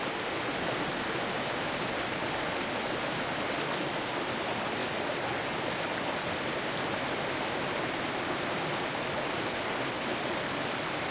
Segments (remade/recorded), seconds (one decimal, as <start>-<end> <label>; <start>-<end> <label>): 0.0-11.1 recorded